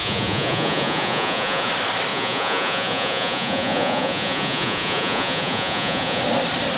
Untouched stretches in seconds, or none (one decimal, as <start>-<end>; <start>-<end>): 1.7-2.1; 6.2-6.8